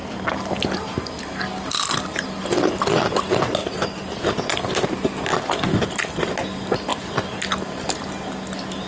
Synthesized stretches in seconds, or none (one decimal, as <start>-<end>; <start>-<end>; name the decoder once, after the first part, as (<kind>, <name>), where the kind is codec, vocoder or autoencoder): none